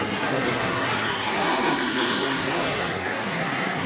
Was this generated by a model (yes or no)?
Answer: yes